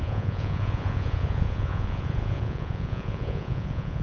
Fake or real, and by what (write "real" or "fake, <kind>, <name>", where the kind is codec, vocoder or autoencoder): fake, vocoder, Vocos